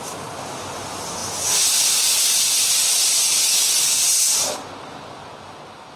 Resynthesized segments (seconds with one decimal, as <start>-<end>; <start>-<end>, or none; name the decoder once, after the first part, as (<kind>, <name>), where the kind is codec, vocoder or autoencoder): none